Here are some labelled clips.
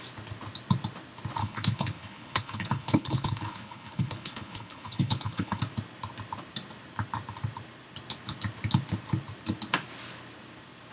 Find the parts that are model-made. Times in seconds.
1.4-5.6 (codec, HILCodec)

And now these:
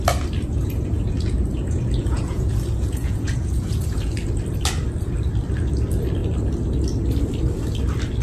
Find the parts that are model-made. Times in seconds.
0.5-4.1 (vocoder, Vocos)